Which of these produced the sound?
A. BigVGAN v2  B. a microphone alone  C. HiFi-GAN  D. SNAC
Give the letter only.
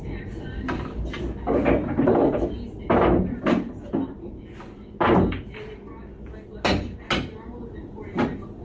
B